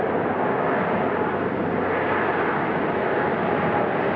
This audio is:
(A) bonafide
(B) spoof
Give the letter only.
A